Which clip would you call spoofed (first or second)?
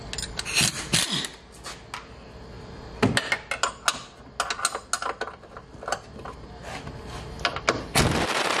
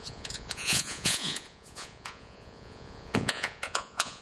second